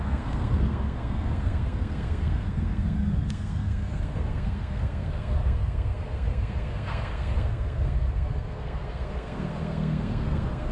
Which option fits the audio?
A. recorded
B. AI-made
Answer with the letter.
B